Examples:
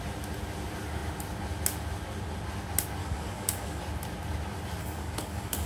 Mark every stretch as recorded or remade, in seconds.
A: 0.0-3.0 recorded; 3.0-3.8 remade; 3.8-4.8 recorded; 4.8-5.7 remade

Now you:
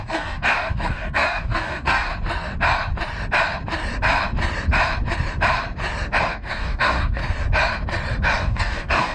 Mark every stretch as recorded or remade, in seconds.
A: 0.0-2.1 remade; 2.1-6.2 recorded; 6.2-7.2 remade; 7.2-8.4 recorded; 8.4-9.1 remade

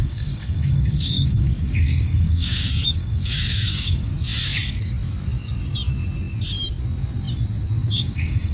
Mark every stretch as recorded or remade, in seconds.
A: 0.0-4.1 remade; 4.1-7.9 recorded; 7.9-8.5 remade

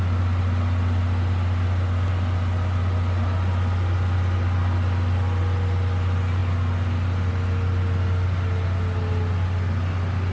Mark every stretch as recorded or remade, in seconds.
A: 0.0-10.3 recorded

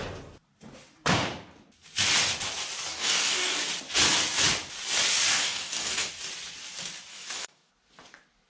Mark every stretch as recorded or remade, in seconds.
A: 0.0-2.9 recorded; 2.9-3.6 remade; 3.6-5.4 recorded; 5.4-6.1 remade; 6.1-7.1 recorded; 7.1-7.7 remade; 7.7-8.5 recorded